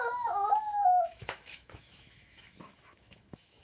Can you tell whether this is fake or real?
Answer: fake